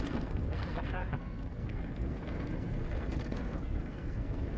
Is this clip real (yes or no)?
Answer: no